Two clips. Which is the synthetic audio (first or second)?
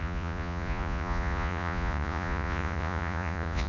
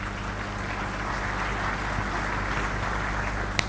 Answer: first